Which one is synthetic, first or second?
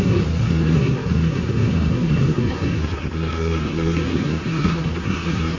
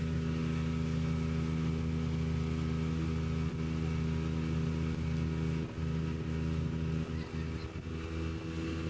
first